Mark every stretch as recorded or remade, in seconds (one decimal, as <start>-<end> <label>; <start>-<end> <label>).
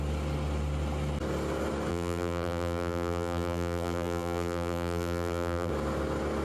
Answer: 0.0-1.9 recorded; 1.9-5.7 remade; 5.7-6.4 recorded